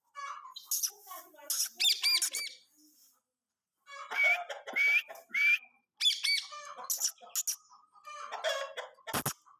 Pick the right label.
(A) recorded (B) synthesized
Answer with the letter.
A